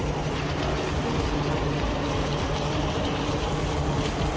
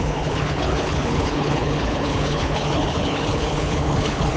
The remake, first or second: second